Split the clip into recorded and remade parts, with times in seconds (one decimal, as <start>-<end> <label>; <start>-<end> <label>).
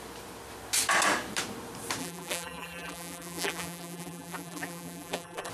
0.0-2.0 recorded; 2.0-5.5 remade